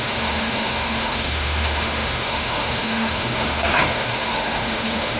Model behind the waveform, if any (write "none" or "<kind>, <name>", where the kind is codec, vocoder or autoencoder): autoencoder, DAC-VAE